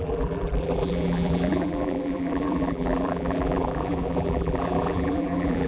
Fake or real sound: fake